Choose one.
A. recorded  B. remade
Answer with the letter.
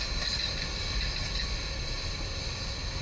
A